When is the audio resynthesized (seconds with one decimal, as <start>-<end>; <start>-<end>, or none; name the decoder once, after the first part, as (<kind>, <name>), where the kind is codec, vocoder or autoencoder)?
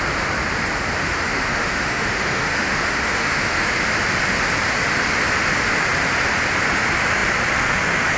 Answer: 1.0-3.7 (autoencoder, DAC-VAE)